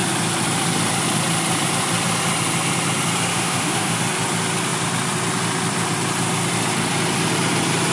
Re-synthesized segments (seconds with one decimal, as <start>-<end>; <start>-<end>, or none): 3.3-4.0